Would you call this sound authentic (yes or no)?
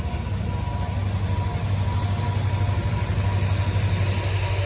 yes